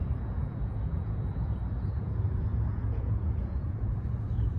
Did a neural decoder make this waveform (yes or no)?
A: yes